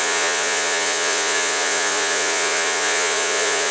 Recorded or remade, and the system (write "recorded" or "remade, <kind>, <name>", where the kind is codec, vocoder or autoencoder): remade, vocoder, Vocos